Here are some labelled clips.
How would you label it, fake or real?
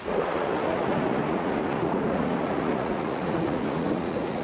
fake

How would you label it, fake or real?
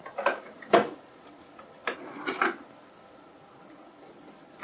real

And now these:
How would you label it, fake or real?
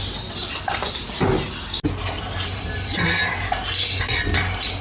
real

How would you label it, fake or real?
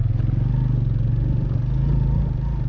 real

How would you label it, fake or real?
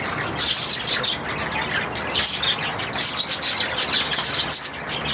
real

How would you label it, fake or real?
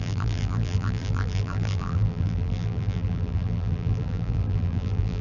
fake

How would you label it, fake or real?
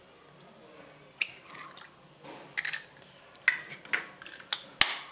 real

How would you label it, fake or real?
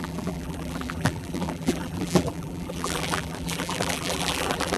fake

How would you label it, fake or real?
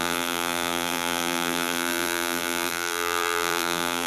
fake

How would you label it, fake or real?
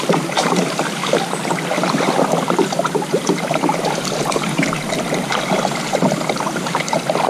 real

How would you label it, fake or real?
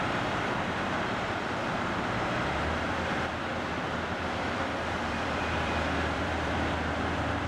fake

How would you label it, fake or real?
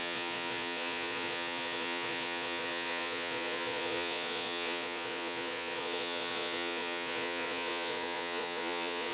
fake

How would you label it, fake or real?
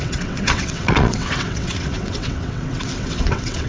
fake